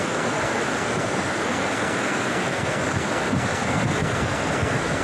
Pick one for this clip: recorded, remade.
remade